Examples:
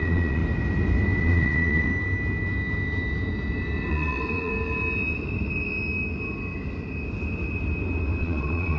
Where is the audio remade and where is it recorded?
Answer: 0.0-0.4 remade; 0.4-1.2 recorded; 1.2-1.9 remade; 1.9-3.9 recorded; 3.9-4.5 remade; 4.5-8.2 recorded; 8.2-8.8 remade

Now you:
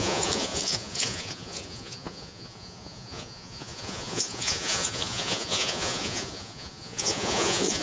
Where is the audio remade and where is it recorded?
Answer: 0.0-7.8 remade